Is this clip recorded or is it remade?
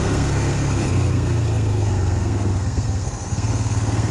remade